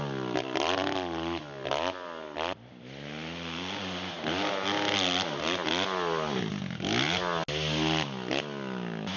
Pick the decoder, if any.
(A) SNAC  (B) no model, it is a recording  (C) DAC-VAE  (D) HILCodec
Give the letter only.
B